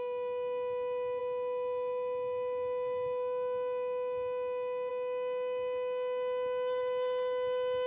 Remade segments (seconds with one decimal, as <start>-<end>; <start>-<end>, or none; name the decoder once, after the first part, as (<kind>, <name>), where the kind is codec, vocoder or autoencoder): none